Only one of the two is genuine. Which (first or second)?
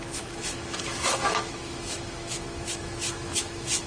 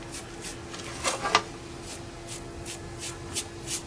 second